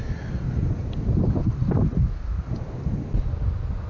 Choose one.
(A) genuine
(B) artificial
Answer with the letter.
A